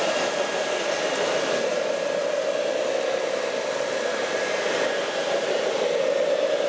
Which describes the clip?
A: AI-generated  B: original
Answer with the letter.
B